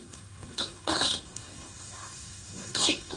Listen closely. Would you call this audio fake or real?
fake